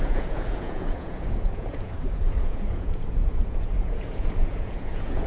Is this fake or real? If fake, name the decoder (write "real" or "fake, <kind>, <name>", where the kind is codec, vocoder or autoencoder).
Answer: fake, vocoder, Vocos